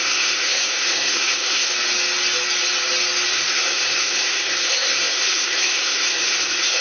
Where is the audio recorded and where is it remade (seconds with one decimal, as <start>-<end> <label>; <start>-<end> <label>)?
0.0-1.7 remade; 1.7-3.3 recorded; 3.3-6.8 remade